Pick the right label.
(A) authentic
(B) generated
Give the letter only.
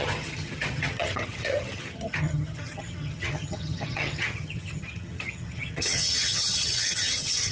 B